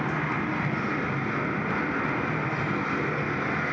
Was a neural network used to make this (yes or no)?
no